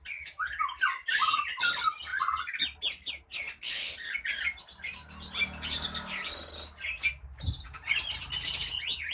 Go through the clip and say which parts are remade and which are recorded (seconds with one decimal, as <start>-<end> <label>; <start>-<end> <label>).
0.0-9.1 recorded

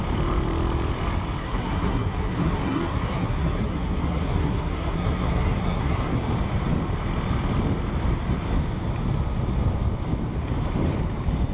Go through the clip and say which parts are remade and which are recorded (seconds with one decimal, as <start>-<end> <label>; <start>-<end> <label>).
0.0-1.4 recorded; 1.4-6.2 remade; 6.2-11.5 recorded

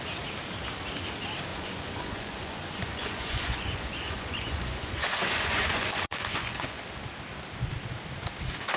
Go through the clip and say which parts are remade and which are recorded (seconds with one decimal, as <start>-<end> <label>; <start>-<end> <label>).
0.0-1.5 recorded; 1.5-6.8 remade; 6.8-8.8 recorded

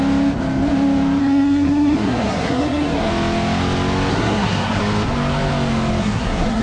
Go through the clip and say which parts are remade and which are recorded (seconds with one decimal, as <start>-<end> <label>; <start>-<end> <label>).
0.0-1.2 recorded; 1.2-3.1 remade; 3.1-4.1 recorded; 4.1-4.8 remade; 4.8-6.0 recorded; 6.0-6.6 remade

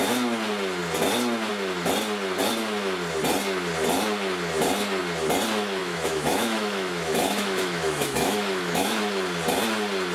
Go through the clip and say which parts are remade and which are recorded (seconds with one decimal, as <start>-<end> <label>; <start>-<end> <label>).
0.0-5.8 recorded; 5.8-9.0 remade; 9.0-10.1 recorded

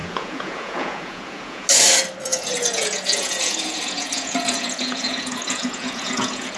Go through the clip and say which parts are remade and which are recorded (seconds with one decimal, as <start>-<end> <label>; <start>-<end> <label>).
0.0-1.7 remade; 1.7-2.3 recorded; 2.3-6.6 remade

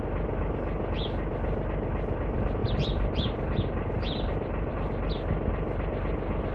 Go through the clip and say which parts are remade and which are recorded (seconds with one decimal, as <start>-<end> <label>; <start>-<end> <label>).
0.0-2.6 recorded; 2.6-4.7 remade; 4.7-6.5 recorded

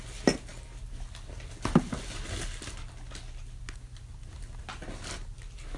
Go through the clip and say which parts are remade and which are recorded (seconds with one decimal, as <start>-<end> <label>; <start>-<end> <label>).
0.0-5.8 recorded